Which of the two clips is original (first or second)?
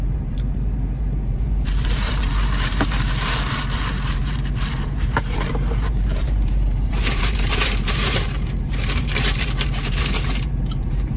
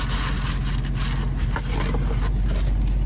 second